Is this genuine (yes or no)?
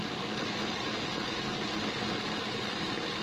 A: yes